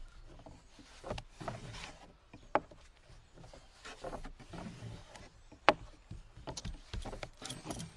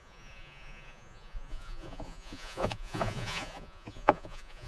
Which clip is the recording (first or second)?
first